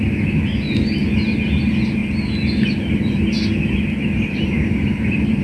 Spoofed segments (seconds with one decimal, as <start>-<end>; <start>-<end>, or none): none